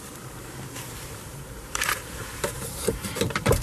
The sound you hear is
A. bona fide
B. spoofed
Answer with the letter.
B